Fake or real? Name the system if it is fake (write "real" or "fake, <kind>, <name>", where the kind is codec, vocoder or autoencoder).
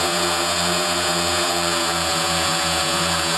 fake, vocoder, Vocos